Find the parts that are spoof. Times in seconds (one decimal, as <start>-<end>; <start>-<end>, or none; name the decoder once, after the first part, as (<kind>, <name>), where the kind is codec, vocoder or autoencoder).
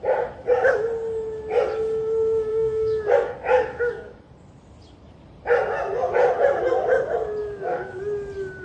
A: 2.5-4.2 (codec, DAC); 7.4-8.0